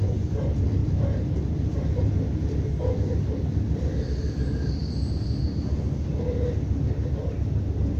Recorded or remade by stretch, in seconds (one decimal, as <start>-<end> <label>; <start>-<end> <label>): 0.0-8.0 recorded